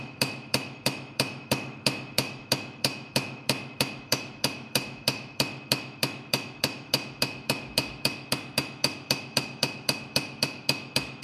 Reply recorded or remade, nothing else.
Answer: remade